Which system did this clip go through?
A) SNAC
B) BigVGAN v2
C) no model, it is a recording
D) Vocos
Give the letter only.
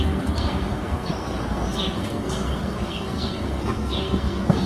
A